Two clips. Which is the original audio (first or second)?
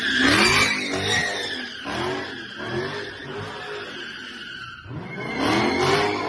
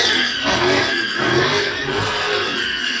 first